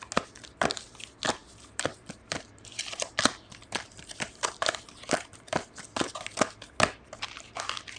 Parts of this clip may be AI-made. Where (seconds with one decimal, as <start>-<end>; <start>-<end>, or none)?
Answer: 1.4-6.1